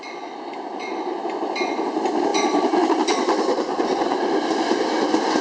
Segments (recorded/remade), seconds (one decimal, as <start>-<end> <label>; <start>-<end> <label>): 0.0-5.4 recorded